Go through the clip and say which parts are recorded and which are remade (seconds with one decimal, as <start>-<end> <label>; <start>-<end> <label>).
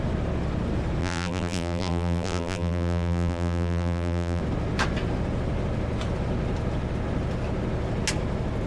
0.0-1.0 recorded; 1.0-4.4 remade; 4.4-8.7 recorded